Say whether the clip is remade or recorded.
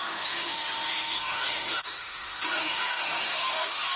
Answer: remade